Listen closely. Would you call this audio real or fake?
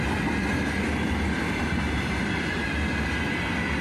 real